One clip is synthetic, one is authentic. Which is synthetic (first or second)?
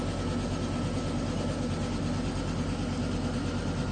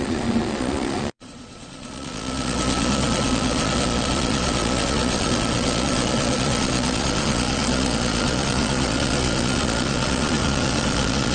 second